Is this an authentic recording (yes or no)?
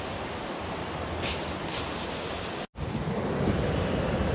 yes